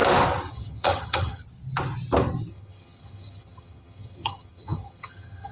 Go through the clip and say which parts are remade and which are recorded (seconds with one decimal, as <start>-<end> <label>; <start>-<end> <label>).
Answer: 0.0-0.5 recorded; 0.5-1.4 remade; 1.4-2.5 recorded; 2.5-5.5 remade